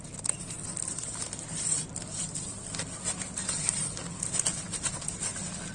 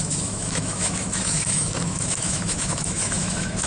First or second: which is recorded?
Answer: first